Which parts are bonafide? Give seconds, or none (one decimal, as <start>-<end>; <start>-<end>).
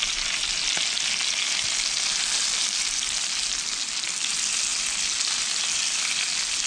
0.0-6.7